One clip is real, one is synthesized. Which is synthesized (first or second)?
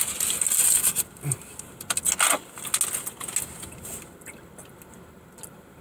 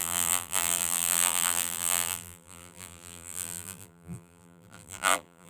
second